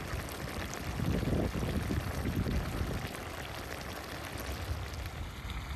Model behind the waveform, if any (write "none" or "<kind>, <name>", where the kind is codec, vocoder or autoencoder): none